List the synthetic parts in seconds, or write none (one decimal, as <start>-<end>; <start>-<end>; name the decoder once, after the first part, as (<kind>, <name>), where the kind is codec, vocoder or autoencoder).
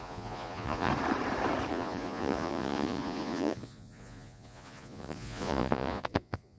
0.0-0.9 (vocoder, Vocos); 1.7-6.6